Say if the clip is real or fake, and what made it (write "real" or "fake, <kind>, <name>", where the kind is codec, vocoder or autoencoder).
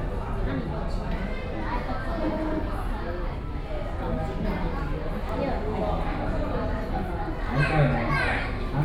real